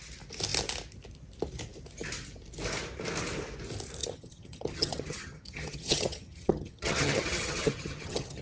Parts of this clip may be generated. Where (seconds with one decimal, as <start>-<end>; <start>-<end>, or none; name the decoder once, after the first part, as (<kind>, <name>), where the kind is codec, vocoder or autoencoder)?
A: 4.0-8.4 (vocoder, HiFi-GAN)